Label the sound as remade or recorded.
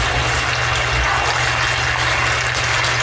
recorded